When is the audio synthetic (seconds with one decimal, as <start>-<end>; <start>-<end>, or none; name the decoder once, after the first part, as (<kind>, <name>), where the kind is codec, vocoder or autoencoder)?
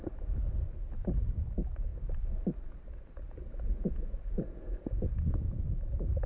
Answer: 3.7-5.6 (vocoder, Vocos)